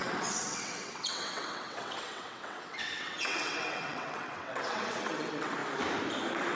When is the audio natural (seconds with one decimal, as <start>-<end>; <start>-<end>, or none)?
5.6-6.5